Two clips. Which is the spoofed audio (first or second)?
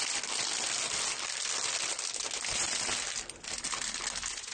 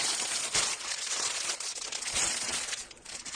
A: second